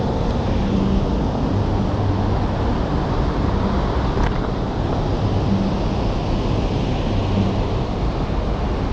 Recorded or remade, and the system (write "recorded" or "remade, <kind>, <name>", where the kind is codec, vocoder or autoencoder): recorded